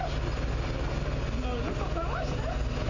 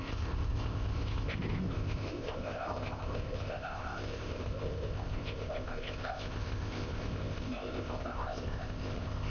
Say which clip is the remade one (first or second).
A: second